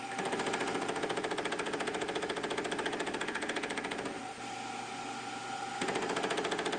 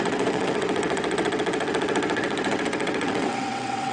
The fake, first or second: second